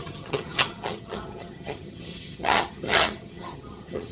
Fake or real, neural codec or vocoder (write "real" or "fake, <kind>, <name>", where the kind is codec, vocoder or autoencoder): fake, vocoder, HiFi-GAN